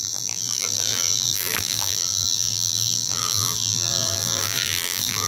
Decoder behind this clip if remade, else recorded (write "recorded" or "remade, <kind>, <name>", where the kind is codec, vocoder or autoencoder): remade, vocoder, BigVGAN v2